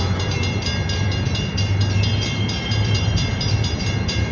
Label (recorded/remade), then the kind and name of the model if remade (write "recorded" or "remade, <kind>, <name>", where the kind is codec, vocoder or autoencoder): remade, vocoder, BigVGAN v2